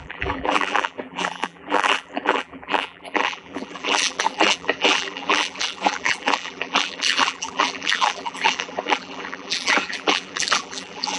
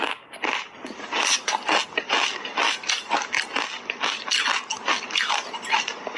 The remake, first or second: first